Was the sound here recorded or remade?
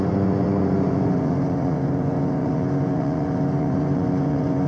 remade